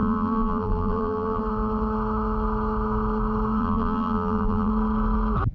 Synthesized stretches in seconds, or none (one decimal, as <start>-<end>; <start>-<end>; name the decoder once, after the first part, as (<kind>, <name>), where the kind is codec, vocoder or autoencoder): 0.0-1.4 (vocoder, BigVGAN v2); 3.6-4.7